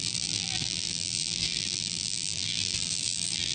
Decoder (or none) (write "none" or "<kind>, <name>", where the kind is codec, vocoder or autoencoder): vocoder, BigVGAN v2